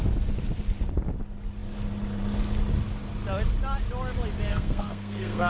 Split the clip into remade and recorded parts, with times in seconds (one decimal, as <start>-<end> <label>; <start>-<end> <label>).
0.0-4.5 recorded; 4.5-5.5 remade